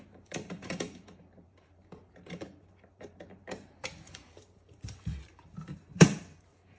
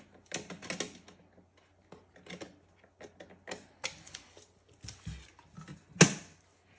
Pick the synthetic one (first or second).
first